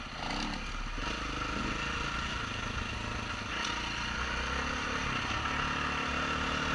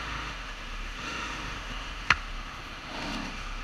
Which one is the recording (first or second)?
first